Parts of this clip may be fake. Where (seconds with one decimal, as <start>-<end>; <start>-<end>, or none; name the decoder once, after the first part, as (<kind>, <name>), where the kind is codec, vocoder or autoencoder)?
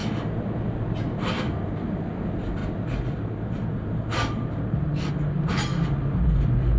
2.6-5.1 (vocoder, BigVGAN v2); 5.7-6.8